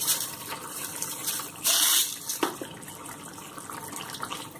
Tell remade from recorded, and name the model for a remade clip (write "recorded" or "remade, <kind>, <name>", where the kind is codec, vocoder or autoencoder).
recorded